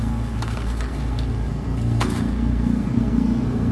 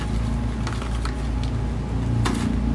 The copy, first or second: first